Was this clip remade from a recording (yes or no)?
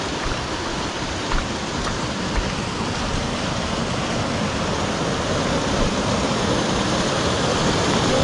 no